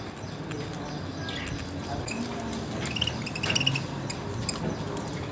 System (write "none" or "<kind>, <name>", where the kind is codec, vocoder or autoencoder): none